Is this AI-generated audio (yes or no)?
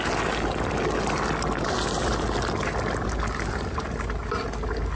no